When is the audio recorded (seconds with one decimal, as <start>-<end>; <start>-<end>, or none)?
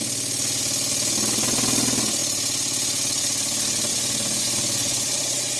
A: 0.0-3.9